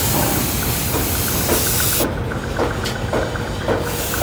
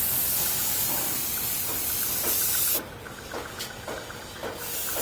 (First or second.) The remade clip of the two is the second